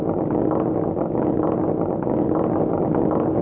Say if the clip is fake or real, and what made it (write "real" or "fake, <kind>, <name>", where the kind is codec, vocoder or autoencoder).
real